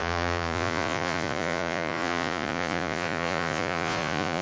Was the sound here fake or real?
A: fake